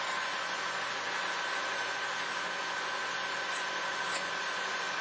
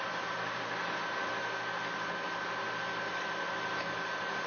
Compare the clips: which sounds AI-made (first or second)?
first